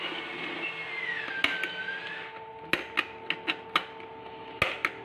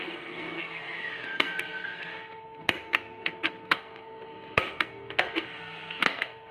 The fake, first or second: second